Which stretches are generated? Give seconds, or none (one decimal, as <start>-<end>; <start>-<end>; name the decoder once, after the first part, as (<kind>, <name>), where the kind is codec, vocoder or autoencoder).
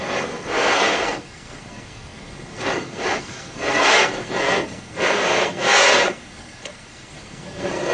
0.0-7.9 (codec, SNAC)